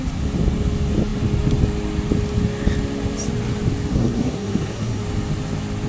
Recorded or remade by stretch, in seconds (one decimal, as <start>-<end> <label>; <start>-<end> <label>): 0.0-3.9 recorded; 3.9-5.0 remade; 5.0-5.9 recorded